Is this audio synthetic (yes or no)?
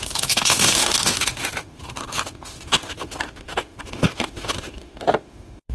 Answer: yes